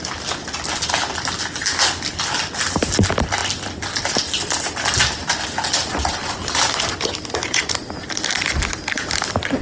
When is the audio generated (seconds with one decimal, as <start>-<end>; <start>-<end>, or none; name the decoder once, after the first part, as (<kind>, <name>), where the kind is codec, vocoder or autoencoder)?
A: none